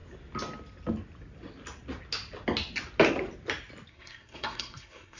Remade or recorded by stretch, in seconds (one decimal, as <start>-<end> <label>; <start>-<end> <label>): 0.0-3.9 recorded; 3.9-5.2 remade